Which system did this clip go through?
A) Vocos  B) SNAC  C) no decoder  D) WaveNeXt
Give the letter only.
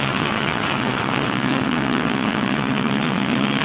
D